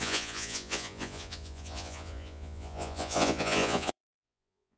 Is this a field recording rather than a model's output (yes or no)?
no